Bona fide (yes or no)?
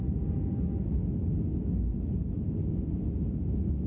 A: yes